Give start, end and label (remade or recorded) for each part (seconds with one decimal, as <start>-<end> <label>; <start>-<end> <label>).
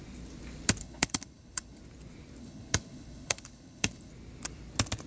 0.0-0.8 recorded; 0.8-1.8 remade; 1.8-2.4 recorded; 2.4-4.1 remade; 4.1-5.1 recorded